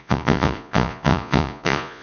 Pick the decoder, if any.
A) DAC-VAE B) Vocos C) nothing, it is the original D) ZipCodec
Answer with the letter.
B